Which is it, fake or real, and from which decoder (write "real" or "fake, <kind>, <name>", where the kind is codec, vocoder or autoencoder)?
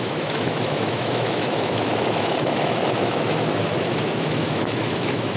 fake, autoencoder, DAC-VAE